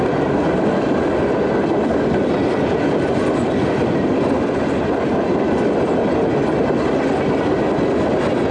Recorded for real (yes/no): yes